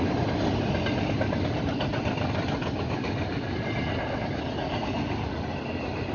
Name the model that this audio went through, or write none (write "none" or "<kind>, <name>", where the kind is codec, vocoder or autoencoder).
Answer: none